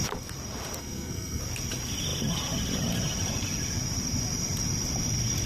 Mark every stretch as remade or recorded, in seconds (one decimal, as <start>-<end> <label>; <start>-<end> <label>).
0.0-0.8 recorded; 0.8-1.4 remade; 1.4-5.5 recorded